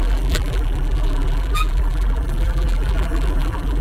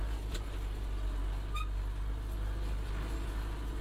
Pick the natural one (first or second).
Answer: second